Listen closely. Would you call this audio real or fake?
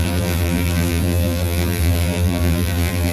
fake